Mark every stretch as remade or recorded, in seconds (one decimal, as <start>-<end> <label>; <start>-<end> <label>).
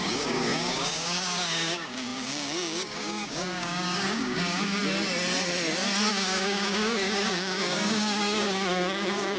0.0-4.8 remade; 4.8-6.1 recorded; 6.1-9.4 remade